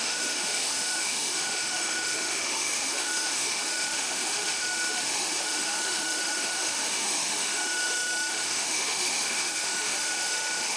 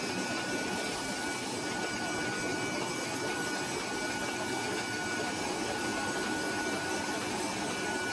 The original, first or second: second